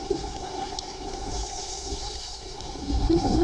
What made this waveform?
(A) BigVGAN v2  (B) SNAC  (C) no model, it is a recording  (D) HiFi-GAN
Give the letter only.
B